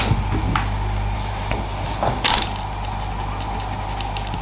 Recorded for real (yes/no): yes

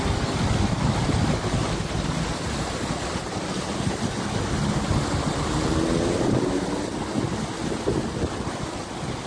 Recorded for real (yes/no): yes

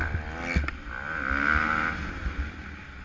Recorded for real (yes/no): yes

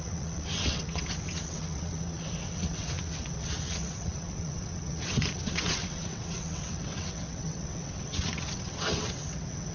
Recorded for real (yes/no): no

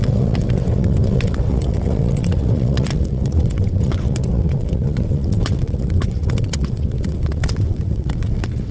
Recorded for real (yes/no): no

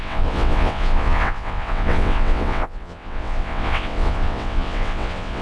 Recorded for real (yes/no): no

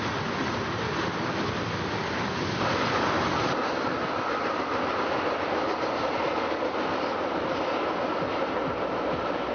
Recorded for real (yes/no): yes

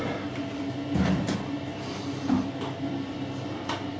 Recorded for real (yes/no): yes